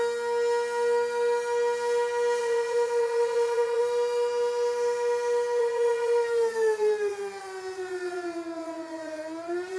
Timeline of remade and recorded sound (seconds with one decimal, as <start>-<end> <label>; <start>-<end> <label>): 0.0-2.4 recorded; 2.4-3.8 remade; 3.8-5.6 recorded; 5.6-9.8 remade